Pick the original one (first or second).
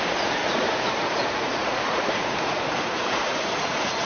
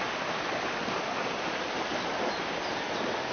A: second